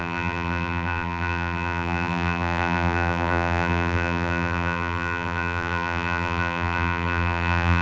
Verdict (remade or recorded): remade